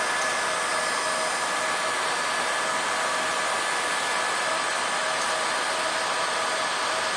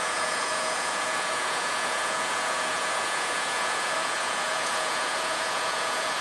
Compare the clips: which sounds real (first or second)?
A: first